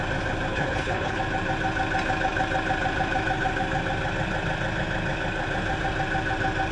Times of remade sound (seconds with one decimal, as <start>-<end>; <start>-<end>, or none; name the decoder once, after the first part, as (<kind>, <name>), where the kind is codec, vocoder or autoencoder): 0.5-1.2 (codec, HILCodec)